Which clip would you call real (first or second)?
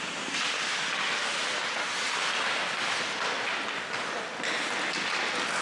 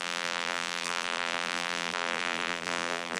first